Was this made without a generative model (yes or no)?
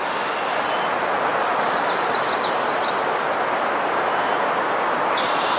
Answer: yes